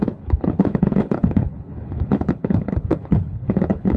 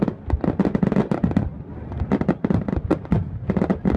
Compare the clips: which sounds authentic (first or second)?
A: second